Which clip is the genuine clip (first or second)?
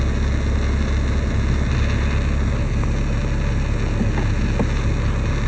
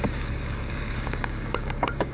first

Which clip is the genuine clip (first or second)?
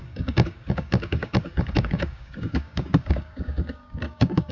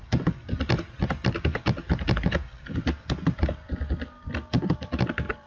second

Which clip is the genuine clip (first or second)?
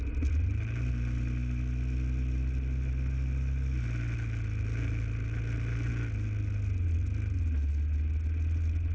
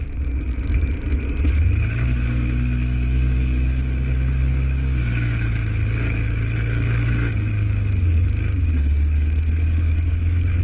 first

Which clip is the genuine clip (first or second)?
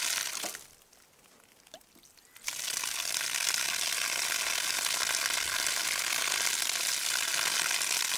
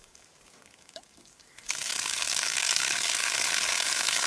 first